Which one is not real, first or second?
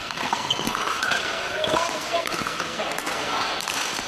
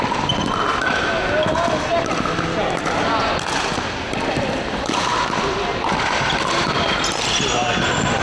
first